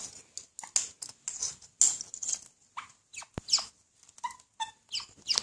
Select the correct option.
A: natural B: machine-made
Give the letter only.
A